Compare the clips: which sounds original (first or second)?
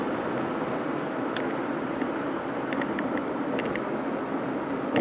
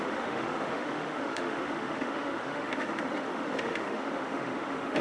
first